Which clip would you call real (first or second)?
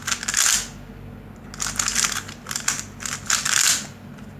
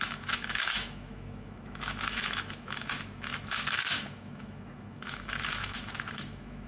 first